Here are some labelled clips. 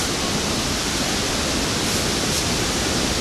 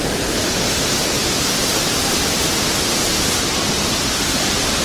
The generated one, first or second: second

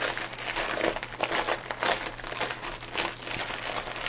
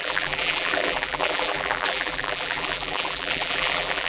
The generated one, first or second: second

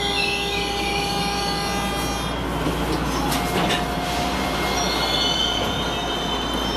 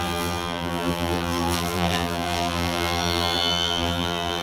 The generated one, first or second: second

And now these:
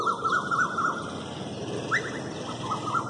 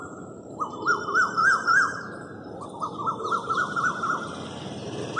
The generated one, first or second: second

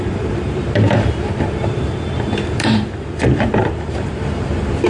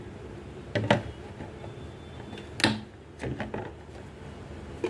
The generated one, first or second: first